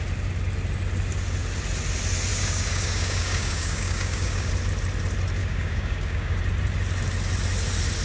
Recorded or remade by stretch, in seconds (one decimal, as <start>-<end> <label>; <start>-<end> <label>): 0.0-2.3 recorded; 2.3-4.5 remade; 4.5-5.4 recorded; 5.4-6.4 remade; 6.4-8.0 recorded